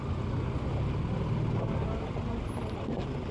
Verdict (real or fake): real